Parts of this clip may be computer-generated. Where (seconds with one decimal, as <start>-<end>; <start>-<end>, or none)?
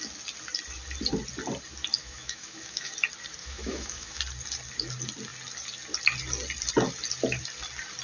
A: 2.0-2.9; 3.4-4.2